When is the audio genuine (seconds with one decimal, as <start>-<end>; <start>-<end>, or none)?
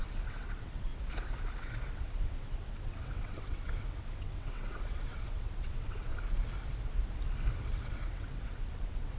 0.9-1.6; 6.1-7.7